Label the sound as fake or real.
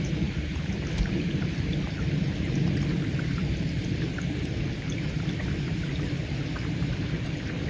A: fake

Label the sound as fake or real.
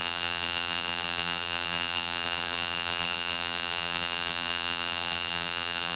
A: fake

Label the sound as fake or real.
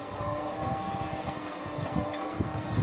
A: fake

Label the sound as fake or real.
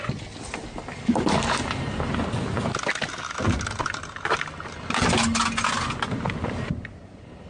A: real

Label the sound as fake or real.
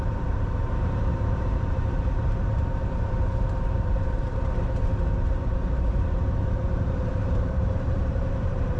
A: fake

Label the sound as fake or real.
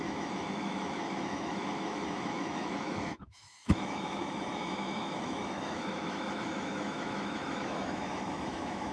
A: fake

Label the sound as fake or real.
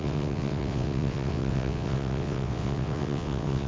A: fake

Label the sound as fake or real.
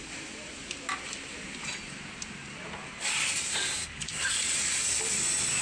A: fake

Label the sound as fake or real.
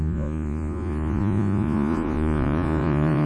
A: fake